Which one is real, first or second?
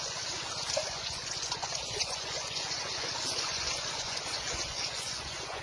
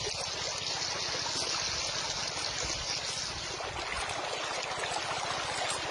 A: second